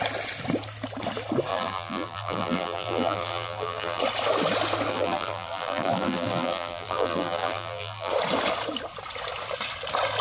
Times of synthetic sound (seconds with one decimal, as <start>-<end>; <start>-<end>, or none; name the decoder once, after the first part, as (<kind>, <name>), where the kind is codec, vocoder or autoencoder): 1.5-4.0 (vocoder, BigVGAN v2); 4.9-8.1